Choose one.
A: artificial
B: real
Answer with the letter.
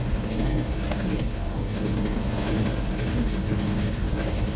A